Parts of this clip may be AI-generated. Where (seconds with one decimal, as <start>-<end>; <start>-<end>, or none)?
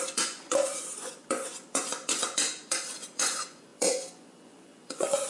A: 0.0-5.3